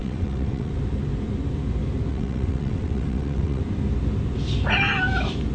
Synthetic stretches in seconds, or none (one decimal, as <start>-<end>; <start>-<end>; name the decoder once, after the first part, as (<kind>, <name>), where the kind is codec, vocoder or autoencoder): 0.0-0.7 (vocoder, WaveNeXt); 2.1-3.6

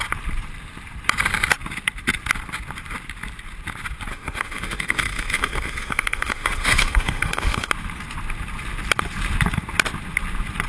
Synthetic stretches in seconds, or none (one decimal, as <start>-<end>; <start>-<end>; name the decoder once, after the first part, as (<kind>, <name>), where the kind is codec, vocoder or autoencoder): 4.1-7.7 (autoencoder, DAC-VAE)

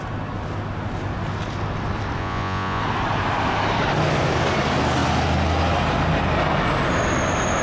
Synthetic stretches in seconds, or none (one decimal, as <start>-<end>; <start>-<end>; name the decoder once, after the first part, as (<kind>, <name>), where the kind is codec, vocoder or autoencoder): 2.2-2.8 (vocoder, Vocos)